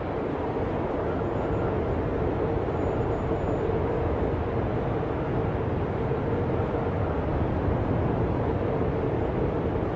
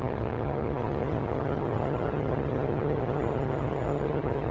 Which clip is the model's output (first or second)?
second